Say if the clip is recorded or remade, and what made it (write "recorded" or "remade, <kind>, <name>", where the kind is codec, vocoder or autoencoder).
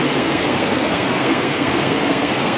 remade, codec, SNAC